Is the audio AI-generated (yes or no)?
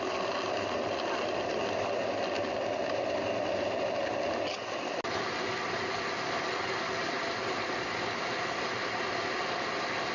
no